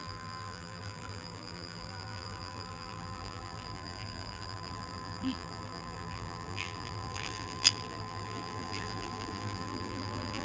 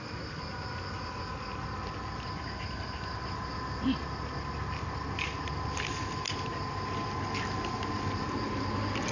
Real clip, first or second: second